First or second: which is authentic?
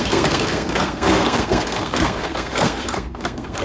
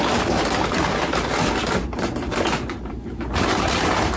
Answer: second